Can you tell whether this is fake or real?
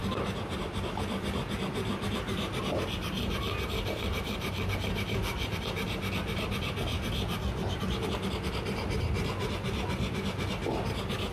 real